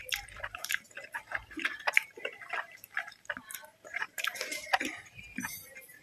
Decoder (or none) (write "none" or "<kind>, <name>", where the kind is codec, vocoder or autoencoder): vocoder, BigVGAN v2